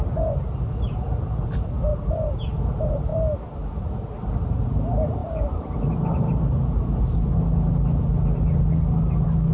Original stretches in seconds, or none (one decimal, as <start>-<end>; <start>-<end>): 0.0-9.5